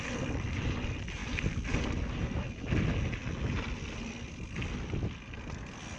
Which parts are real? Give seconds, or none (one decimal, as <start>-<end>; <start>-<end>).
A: 0.0-6.0